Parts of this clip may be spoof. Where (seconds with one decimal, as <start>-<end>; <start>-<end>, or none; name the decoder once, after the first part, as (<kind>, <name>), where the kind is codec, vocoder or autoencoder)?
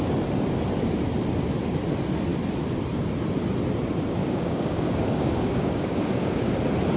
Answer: 4.2-6.5 (codec, DAC)